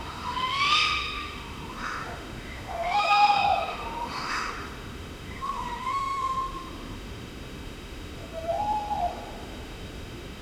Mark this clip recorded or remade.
remade